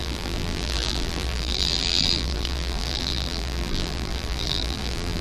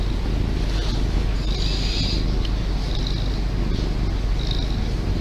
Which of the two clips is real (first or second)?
second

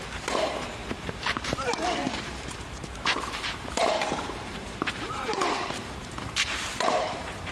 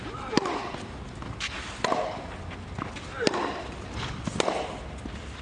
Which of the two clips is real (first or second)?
second